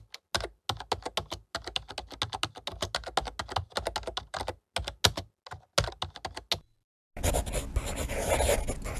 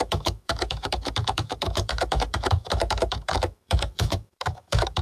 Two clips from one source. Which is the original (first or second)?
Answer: first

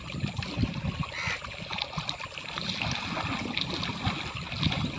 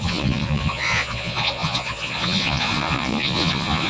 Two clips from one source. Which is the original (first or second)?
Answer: first